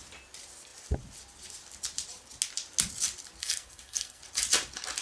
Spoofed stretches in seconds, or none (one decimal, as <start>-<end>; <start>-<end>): 3.4-4.2